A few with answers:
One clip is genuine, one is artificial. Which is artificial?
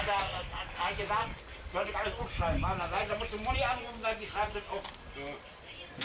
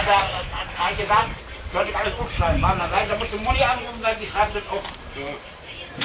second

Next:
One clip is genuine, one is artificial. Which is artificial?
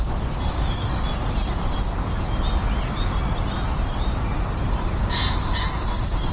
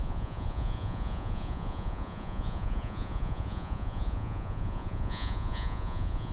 second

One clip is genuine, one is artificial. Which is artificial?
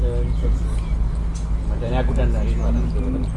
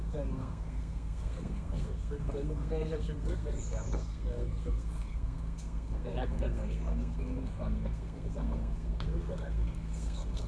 second